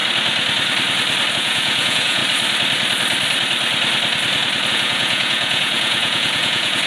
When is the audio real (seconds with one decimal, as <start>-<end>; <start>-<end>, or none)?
0.0-1.3; 2.2-4.7

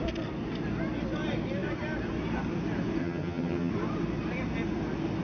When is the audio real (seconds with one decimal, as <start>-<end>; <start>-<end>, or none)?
0.0-3.0; 3.7-5.2

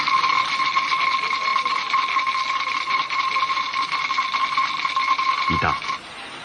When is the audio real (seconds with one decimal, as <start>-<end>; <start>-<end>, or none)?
0.0-6.4

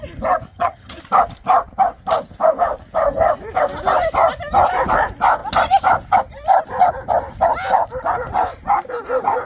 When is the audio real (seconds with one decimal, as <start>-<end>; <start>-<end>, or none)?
0.0-0.5; 1.0-9.4